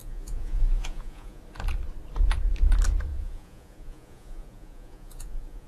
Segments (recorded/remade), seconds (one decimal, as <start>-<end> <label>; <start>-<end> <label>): 0.0-1.4 remade; 1.4-3.1 recorded; 3.1-5.7 remade